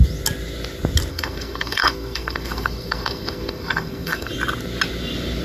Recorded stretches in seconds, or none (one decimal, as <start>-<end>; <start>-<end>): 0.0-1.1; 4.3-5.4